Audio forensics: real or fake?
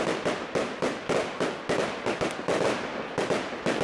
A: real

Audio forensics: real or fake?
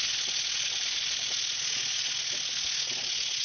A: real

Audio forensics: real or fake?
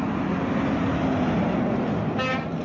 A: real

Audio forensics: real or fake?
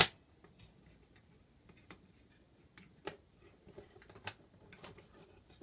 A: real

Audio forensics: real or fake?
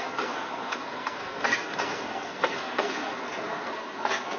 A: fake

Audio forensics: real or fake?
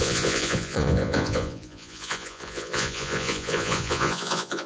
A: fake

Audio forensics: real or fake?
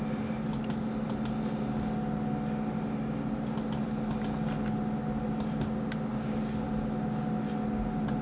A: real